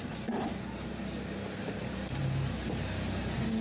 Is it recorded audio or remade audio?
recorded